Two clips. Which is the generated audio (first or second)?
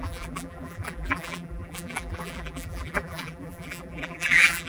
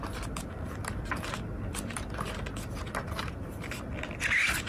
first